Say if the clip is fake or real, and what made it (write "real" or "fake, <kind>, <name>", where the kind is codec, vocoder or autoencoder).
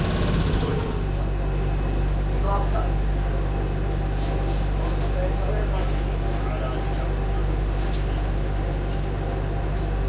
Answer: real